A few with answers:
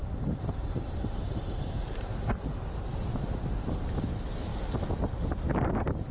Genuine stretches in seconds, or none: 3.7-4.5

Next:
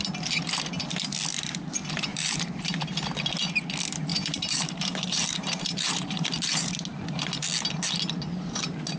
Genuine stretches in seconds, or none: 0.0-2.1; 2.7-4.1; 6.7-9.0

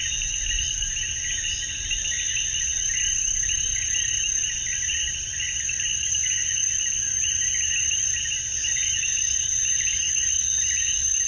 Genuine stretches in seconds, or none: 0.0-4.5; 6.8-9.1; 10.8-11.3

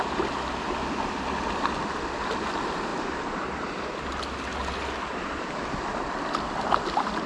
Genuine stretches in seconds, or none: 0.0-2.9; 3.9-4.6; 6.6-7.3